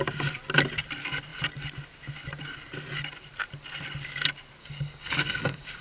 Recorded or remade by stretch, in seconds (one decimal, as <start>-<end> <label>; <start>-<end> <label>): 0.0-4.6 recorded; 4.6-5.8 remade